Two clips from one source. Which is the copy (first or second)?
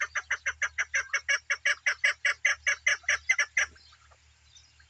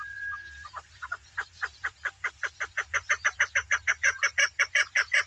second